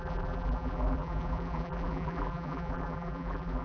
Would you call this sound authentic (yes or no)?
no